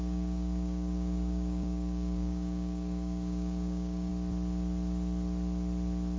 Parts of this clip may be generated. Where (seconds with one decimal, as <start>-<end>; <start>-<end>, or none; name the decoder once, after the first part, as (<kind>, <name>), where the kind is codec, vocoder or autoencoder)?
0.0-4.1 (codec, DAC)